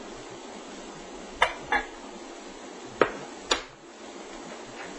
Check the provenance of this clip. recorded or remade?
recorded